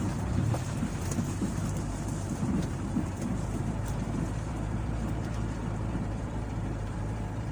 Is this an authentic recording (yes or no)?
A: no